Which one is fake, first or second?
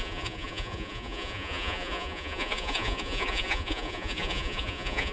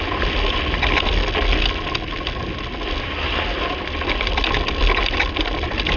first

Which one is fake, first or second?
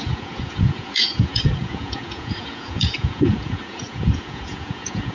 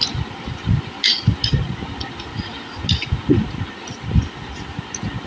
first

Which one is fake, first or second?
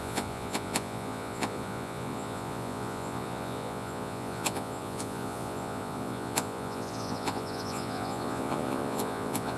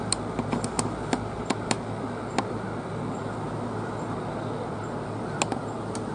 first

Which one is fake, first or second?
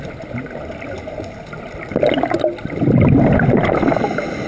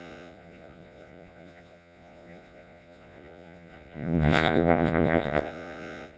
second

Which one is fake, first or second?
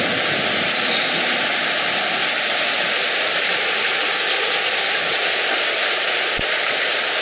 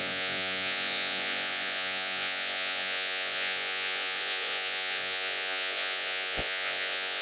second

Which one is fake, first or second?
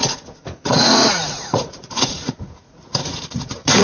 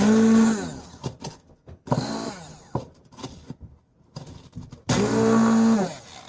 first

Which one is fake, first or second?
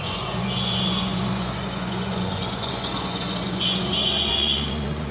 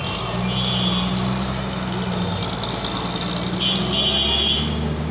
first